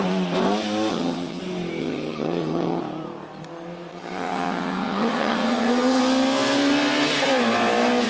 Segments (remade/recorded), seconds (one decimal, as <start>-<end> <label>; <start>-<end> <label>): 0.0-0.9 recorded; 0.9-1.4 remade; 1.4-1.8 recorded; 1.8-2.8 remade; 2.8-3.9 recorded; 3.9-6.0 remade; 6.0-8.1 recorded